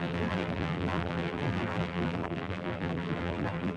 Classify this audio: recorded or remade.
remade